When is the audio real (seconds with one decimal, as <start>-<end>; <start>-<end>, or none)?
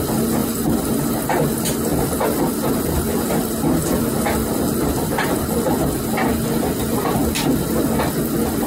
0.0-8.7